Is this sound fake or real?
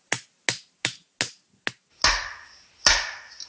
real